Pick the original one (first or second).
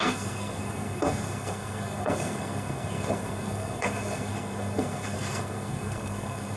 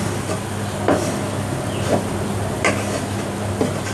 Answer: second